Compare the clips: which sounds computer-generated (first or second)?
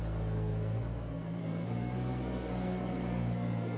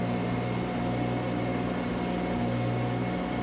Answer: first